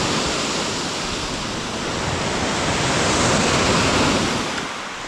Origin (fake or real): real